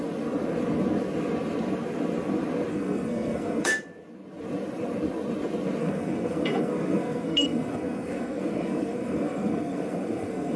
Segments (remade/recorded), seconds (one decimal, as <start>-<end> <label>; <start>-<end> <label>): 0.0-2.7 recorded; 2.7-3.7 remade; 3.7-5.8 recorded; 5.8-10.6 remade

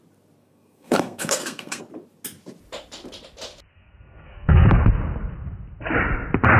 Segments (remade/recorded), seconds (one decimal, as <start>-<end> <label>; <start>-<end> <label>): 0.0-0.4 recorded; 0.4-1.8 remade; 1.8-3.7 recorded; 3.7-4.8 remade; 4.8-6.6 recorded

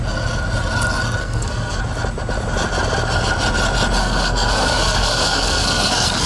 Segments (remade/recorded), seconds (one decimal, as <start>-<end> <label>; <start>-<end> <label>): 0.0-1.2 recorded; 1.2-1.8 remade; 1.8-4.0 recorded; 4.0-6.3 remade

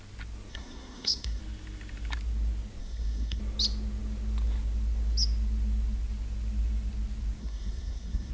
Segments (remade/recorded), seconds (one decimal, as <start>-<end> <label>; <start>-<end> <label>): 0.0-0.5 recorded; 0.5-1.4 remade; 1.4-2.8 recorded; 2.8-3.4 remade; 3.4-7.4 recorded; 7.4-8.3 remade

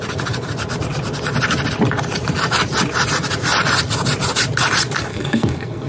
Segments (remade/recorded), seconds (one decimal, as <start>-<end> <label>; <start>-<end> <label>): 0.0-5.1 recorded; 5.1-5.9 remade

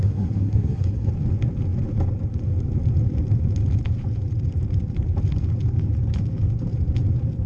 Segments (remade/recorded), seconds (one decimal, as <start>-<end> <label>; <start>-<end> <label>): 0.0-1.1 remade; 1.1-7.5 recorded